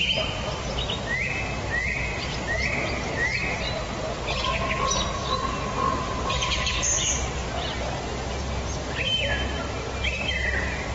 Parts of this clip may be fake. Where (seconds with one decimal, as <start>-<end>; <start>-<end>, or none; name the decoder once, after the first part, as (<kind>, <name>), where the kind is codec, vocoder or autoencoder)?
2.1-3.1 (vocoder, BigVGAN v2); 5.2-6.8